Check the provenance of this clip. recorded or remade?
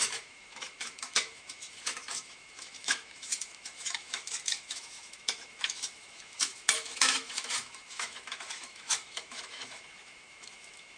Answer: remade